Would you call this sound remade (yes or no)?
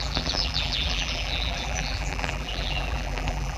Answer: yes